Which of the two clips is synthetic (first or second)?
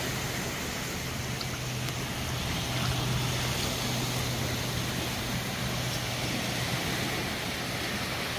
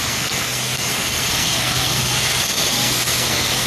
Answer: second